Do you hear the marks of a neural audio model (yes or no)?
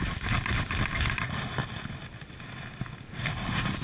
no